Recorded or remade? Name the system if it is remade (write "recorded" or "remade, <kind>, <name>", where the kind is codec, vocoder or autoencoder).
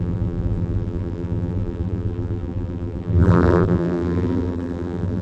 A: remade, vocoder, BigVGAN v2